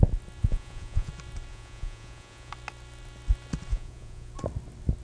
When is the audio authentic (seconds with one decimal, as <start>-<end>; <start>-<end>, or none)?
0.0-0.4; 1.1-1.5; 2.5-3.7; 4.3-5.0